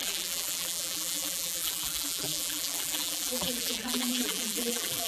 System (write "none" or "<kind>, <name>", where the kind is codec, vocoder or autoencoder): vocoder, BigVGAN v2